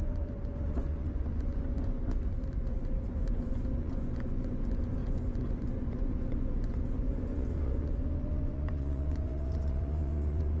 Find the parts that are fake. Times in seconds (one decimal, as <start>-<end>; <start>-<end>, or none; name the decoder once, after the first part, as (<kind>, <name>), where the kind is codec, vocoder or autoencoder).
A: 0.0-10.6 (vocoder, Vocos)